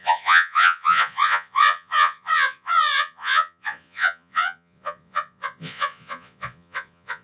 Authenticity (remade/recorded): remade